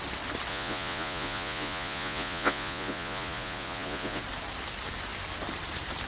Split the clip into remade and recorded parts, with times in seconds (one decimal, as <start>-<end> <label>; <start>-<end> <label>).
0.0-0.5 recorded; 0.5-4.2 remade; 4.2-6.1 recorded